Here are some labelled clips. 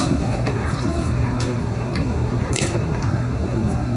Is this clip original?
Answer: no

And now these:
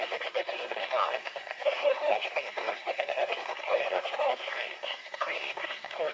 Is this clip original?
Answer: no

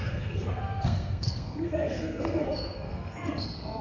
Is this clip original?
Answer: no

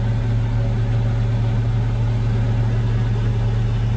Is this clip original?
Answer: yes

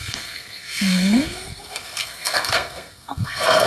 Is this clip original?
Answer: no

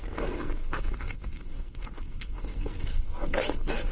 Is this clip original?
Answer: no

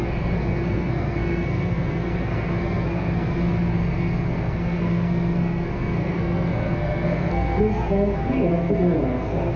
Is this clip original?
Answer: no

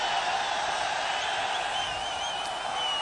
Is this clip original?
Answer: yes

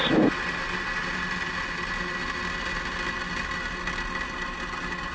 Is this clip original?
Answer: yes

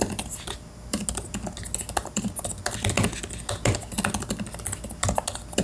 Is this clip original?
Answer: yes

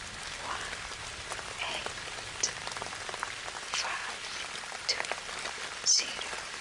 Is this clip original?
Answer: yes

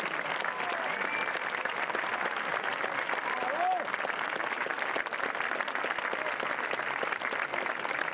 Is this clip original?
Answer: yes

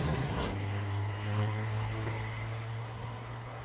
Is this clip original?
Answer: no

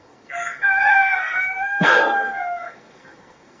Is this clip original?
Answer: no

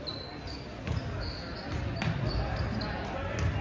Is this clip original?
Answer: yes